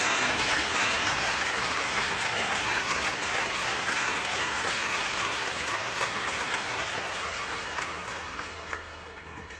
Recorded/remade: remade